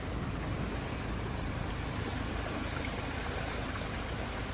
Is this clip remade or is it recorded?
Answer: recorded